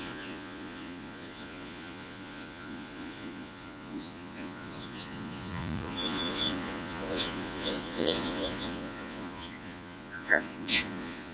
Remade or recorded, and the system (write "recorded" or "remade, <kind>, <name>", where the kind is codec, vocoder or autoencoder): remade, vocoder, Vocos